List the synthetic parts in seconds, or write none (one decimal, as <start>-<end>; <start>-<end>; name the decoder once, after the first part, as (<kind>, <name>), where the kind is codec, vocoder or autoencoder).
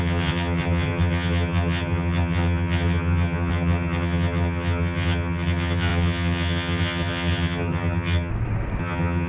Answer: 0.0-8.3 (vocoder, HiFi-GAN); 8.8-9.3